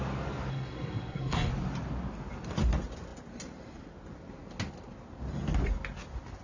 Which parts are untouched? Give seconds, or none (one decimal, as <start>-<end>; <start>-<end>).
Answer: 0.0-0.5; 1.5-6.4